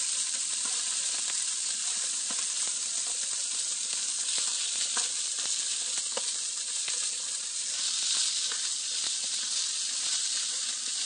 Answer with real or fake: real